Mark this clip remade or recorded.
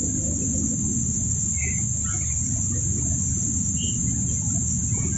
remade